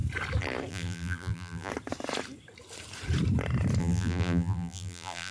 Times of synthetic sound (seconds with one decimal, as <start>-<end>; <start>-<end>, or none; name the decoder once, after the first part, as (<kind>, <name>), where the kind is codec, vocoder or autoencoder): 0.7-1.7 (vocoder, BigVGAN v2); 3.8-5.3